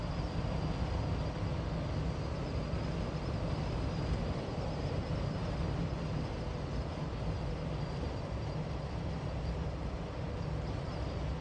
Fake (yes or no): no